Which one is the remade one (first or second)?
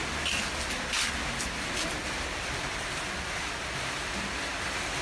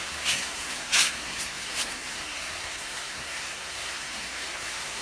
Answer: second